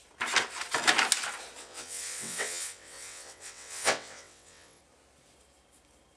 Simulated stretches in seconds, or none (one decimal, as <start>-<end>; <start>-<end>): 1.6-4.8